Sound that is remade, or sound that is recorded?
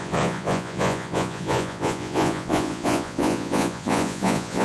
remade